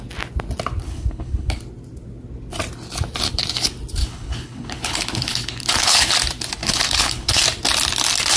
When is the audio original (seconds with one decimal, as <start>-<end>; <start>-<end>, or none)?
0.0-0.8; 1.6-4.0; 6.1-6.6; 7.4-8.4